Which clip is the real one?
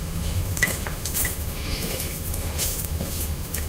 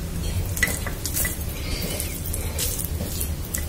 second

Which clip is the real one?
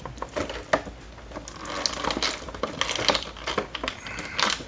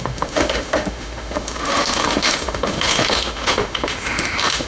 first